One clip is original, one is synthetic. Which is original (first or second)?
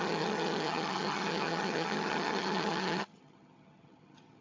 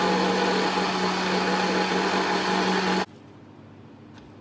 second